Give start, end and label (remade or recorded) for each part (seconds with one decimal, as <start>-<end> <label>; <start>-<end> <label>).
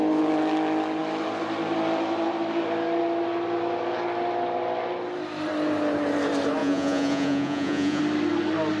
0.0-6.6 recorded; 6.6-8.0 remade; 8.0-8.8 recorded